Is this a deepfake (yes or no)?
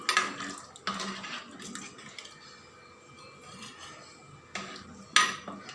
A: no